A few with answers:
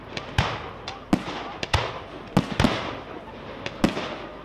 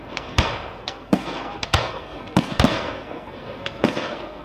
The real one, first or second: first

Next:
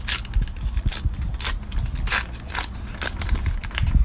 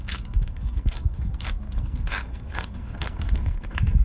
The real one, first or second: first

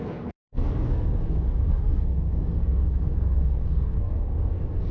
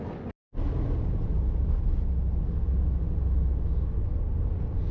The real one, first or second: second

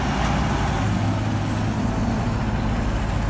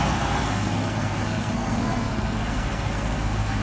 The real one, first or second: first